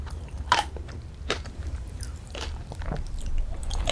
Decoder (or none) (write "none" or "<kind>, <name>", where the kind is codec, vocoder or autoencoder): vocoder, BigVGAN v2